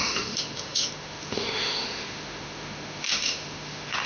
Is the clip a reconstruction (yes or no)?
yes